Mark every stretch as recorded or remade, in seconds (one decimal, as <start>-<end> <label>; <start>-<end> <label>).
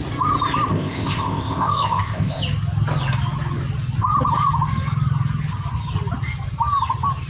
0.0-0.7 recorded; 0.7-2.4 remade; 2.4-7.3 recorded